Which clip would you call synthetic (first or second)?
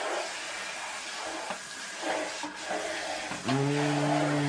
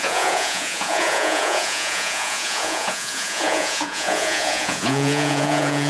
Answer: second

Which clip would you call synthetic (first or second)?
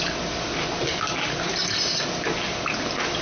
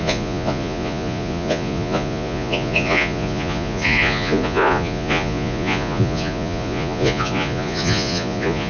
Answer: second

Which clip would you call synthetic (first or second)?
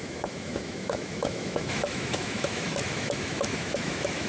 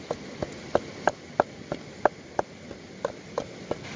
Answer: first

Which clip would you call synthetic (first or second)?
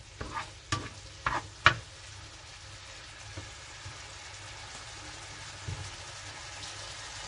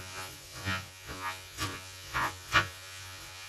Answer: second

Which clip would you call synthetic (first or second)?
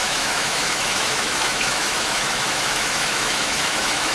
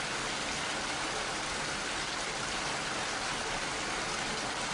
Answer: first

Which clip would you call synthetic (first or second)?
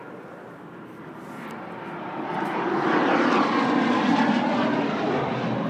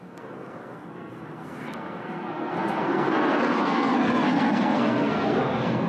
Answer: second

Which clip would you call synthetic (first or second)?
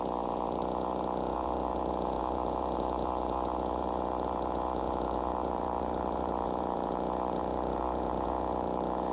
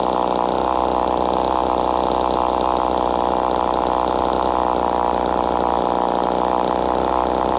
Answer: first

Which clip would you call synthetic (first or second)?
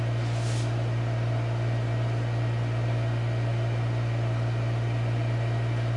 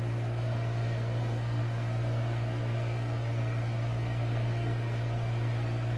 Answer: second